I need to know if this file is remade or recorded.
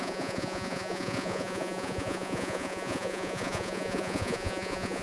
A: remade